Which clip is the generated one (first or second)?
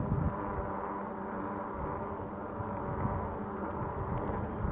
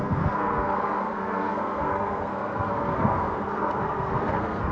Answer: second